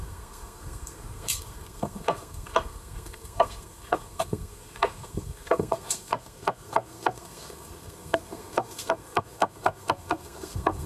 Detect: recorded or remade remade